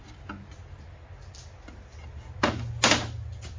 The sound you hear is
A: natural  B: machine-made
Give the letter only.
A